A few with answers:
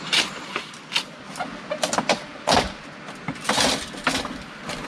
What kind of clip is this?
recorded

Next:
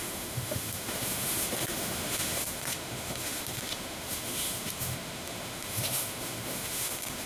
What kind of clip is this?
remade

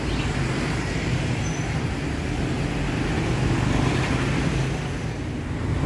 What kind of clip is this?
recorded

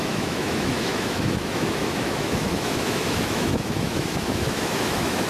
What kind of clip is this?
remade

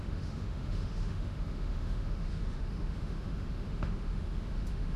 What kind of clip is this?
remade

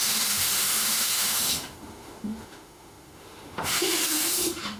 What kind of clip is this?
remade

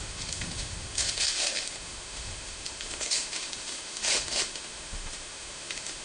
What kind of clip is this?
remade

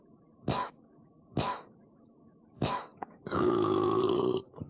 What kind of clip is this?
remade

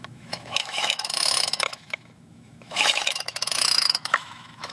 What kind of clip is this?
remade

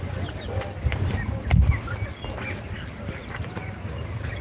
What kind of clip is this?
recorded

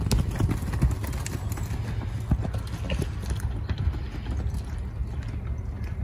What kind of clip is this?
recorded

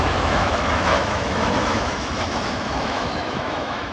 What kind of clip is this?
remade